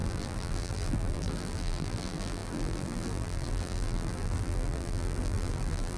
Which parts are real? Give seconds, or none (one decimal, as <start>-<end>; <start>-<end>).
none